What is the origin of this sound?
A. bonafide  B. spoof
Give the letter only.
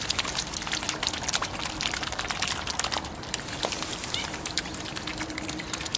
A